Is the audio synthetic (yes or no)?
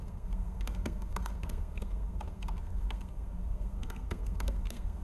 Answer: yes